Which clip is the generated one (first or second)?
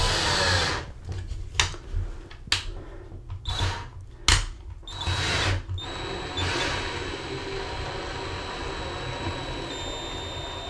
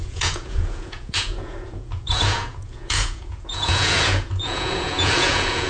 second